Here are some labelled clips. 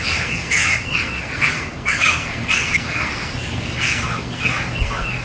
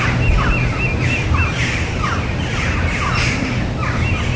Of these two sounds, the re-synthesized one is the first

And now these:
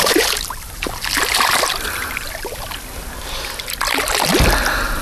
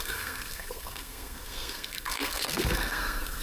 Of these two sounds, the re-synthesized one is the second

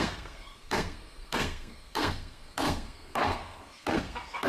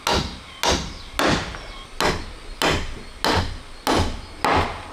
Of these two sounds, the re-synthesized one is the first